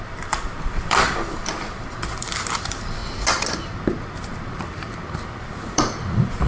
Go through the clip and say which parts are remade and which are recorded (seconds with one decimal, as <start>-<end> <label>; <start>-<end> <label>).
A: 0.0-3.0 remade; 3.0-4.0 recorded; 4.0-6.5 remade